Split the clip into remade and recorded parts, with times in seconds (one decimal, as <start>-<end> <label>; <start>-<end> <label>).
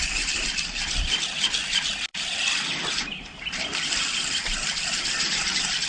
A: 0.0-2.1 recorded; 2.1-5.5 remade; 5.5-5.9 recorded